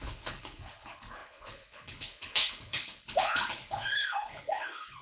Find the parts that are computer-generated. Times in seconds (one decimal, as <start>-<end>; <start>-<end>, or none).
0.0-5.0